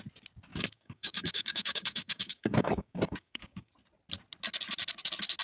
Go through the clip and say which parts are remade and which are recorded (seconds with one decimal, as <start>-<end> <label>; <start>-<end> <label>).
0.0-0.5 recorded; 0.5-3.7 remade; 3.7-5.4 recorded